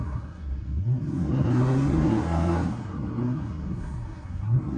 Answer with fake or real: fake